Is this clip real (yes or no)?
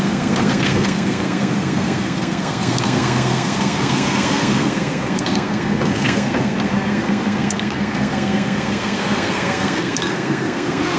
no